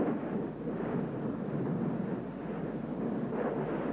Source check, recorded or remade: recorded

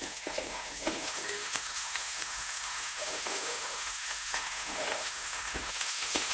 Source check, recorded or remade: remade